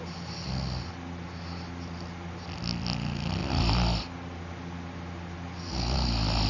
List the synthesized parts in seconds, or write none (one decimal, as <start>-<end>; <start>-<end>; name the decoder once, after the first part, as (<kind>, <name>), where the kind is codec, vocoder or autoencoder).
none